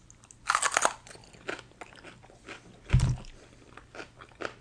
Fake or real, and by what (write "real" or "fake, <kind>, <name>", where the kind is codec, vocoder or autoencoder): real